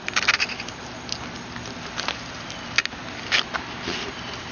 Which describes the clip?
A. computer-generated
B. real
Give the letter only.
B